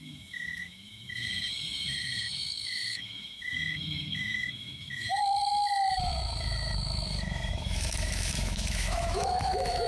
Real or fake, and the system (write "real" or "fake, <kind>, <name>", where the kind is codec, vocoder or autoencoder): fake, autoencoder, DAC-VAE